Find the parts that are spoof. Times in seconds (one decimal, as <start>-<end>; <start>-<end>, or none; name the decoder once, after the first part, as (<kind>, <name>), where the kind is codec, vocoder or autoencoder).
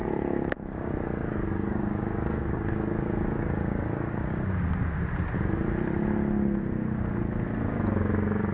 0.0-4.9 (codec, DAC)